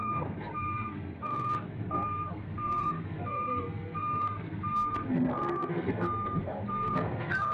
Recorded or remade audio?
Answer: remade